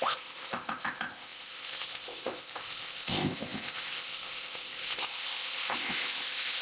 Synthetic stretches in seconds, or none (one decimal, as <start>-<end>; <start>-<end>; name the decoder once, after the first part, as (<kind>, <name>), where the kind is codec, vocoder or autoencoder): 0.0-6.6 (codec, ZipCodec)